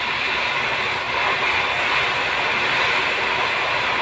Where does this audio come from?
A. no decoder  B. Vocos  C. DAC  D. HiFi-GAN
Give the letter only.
A